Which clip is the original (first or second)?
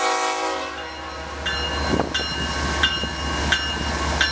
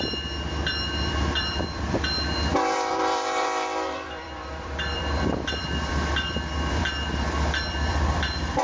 first